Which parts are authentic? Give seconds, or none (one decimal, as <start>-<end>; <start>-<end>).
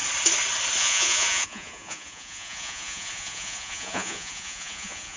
0.0-0.8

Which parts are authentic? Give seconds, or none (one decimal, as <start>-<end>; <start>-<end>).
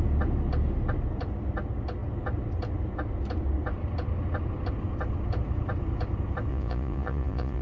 0.0-6.5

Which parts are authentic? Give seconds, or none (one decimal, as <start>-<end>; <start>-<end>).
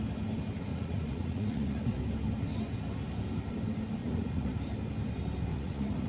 0.0-0.7; 2.0-4.0; 4.6-5.5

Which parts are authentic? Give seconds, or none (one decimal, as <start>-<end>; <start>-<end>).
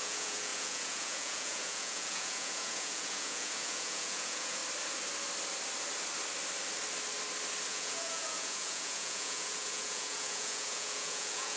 4.6-7.7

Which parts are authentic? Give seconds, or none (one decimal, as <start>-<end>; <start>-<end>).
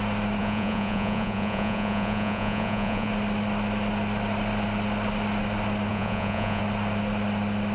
0.0-0.4; 3.1-5.9; 6.6-7.7